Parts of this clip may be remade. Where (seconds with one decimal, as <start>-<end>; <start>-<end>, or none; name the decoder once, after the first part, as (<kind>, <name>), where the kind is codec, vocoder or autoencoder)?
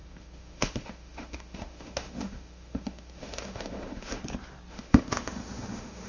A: 0.0-4.2 (autoencoder, DAC-VAE); 4.7-6.1